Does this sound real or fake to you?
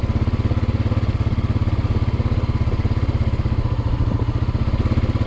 real